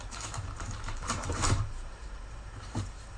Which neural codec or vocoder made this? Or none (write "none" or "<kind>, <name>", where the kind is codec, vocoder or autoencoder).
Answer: vocoder, BigVGAN v2